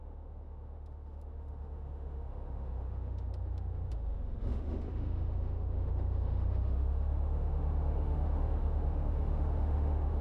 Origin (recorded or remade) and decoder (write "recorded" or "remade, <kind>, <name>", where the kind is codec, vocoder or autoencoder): remade, autoencoder, DAC-VAE